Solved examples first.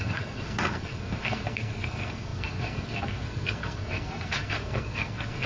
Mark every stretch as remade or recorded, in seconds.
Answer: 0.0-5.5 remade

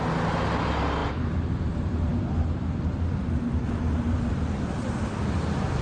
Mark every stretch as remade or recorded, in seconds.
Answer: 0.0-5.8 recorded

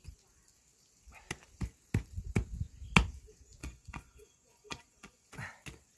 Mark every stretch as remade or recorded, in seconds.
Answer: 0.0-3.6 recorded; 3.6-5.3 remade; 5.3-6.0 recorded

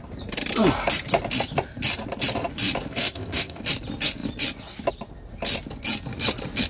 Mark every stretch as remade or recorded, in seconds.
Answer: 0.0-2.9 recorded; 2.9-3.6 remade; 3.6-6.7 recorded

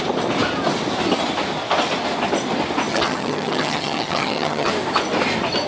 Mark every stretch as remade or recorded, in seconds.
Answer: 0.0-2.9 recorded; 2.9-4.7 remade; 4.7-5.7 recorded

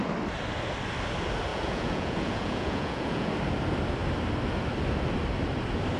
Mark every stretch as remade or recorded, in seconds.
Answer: 0.0-1.5 recorded; 1.5-3.3 remade; 3.3-6.0 recorded

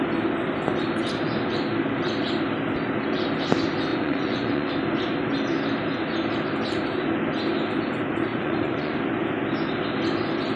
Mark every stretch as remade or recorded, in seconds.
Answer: 0.0-3.9 recorded; 3.9-4.7 remade; 4.7-8.3 recorded; 8.3-8.9 remade; 8.9-10.6 recorded

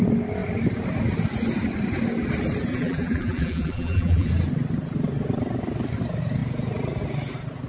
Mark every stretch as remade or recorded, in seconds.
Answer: 0.0-2.7 recorded; 2.7-4.3 remade; 4.3-7.7 recorded